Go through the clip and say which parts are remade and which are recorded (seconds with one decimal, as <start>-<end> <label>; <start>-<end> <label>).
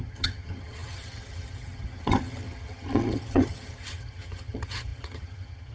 0.0-5.7 remade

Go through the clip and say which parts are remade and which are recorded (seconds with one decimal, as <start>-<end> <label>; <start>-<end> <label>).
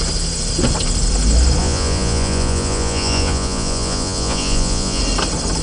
0.0-1.6 recorded; 1.6-5.0 remade; 5.0-5.6 recorded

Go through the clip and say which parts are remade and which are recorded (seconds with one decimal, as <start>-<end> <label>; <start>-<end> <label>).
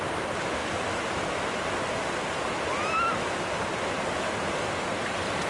0.0-5.5 recorded